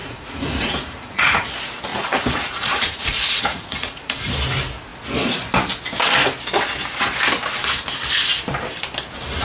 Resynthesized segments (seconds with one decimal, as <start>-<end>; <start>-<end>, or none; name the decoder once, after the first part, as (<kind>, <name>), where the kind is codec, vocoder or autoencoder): 0.0-1.5 (vocoder, Vocos); 1.9-4.3